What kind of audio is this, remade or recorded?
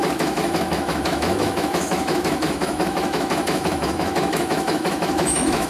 remade